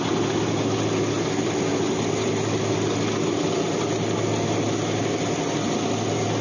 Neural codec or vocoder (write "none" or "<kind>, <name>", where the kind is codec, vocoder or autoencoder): none